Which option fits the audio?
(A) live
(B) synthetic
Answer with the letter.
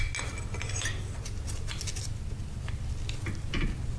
A